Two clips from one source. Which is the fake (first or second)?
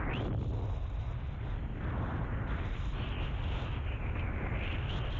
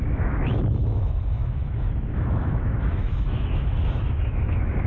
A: second